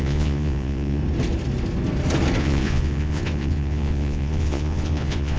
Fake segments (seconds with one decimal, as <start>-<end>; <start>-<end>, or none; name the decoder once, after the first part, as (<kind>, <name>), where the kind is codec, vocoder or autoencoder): 0.0-1.0 (vocoder, Vocos); 2.4-5.4